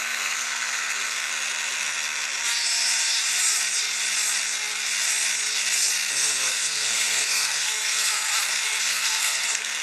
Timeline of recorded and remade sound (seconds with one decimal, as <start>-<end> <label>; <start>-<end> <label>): 0.0-1.3 remade; 1.3-6.1 recorded; 6.1-8.3 remade; 8.3-8.8 recorded; 8.8-9.8 remade